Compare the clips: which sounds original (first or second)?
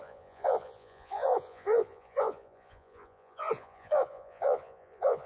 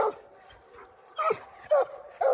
second